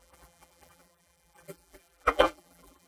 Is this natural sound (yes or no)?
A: no